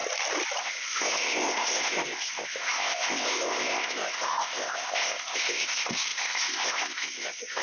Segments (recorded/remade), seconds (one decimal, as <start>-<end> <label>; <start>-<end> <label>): 0.0-0.6 recorded; 0.6-7.6 remade